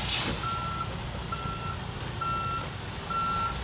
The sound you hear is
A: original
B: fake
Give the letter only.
A